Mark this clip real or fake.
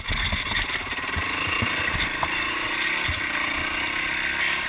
real